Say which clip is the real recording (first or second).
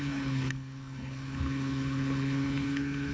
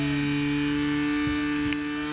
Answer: second